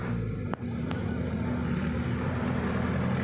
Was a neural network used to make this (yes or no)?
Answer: no